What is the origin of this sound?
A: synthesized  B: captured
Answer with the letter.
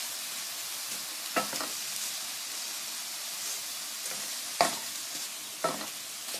B